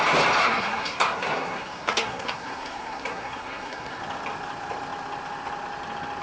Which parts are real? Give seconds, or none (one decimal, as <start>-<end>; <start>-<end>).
0.0-0.4; 4.0-6.2